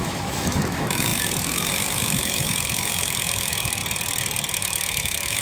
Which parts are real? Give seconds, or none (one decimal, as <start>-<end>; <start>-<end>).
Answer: 3.8-4.5